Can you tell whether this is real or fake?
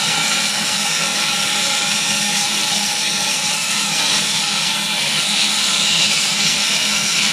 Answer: fake